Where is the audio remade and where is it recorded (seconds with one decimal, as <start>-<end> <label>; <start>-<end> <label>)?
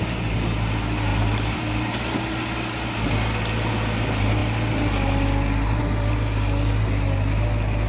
0.0-1.1 recorded; 1.1-1.8 remade; 1.8-7.9 recorded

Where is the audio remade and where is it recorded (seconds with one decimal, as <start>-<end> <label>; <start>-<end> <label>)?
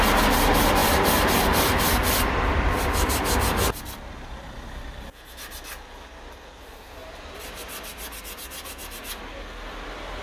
0.0-0.8 recorded; 0.8-4.1 remade; 4.1-7.0 recorded; 7.0-8.2 remade; 8.2-10.2 recorded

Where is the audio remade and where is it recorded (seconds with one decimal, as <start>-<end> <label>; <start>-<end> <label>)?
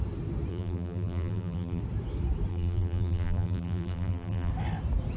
0.0-0.5 recorded; 0.5-1.8 remade; 1.8-2.5 recorded; 2.5-4.5 remade; 4.5-5.2 recorded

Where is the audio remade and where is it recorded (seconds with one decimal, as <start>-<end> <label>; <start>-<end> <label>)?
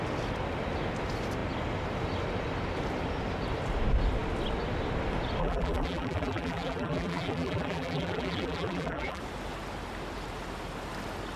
0.0-5.4 recorded; 5.4-9.2 remade; 9.2-11.4 recorded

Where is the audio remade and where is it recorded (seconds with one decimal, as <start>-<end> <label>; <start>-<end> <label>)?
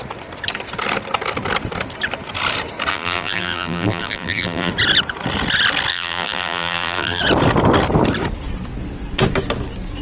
0.0-2.9 recorded; 2.9-4.7 remade; 4.7-5.9 recorded; 5.9-7.2 remade; 7.2-10.0 recorded